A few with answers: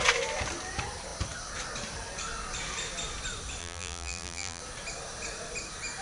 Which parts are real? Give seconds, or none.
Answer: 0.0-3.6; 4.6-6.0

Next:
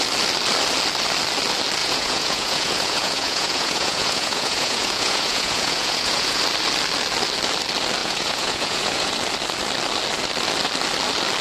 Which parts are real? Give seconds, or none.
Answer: 0.0-1.8; 6.4-8.0; 9.1-11.4

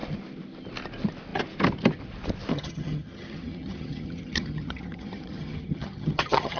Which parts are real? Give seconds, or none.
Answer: 0.0-2.5

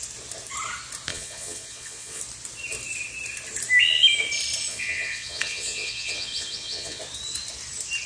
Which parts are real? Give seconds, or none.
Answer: 0.0-1.1; 2.2-4.7; 7.0-8.1

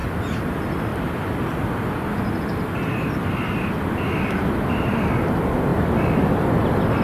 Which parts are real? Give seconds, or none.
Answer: 0.5-5.7

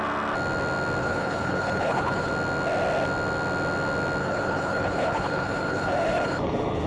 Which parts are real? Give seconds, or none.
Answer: 0.0-1.0; 2.3-4.2